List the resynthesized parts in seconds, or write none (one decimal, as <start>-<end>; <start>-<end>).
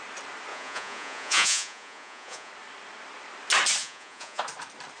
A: 0.5-2.5; 3.8-4.4